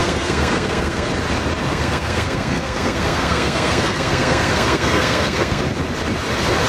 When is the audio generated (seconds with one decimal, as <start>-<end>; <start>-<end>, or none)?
0.0-1.1; 1.7-5.6